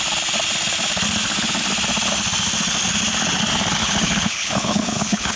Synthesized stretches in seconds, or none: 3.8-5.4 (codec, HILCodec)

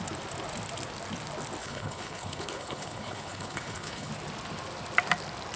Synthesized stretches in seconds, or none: 1.6-4.1 (codec, HILCodec)

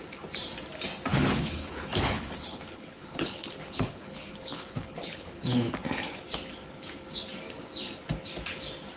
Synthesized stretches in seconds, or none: 1.1-5.7 (codec, HILCodec)

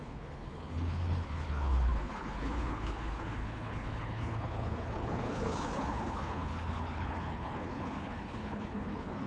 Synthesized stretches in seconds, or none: 0.0-9.3 (codec, HILCodec)

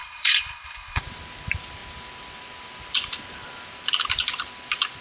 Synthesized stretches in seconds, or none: 0.0-1.0 (codec, HILCodec)